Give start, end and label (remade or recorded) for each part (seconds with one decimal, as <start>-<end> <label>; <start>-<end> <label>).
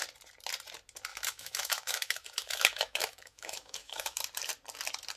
0.0-1.1 recorded; 1.1-4.2 remade; 4.2-5.2 recorded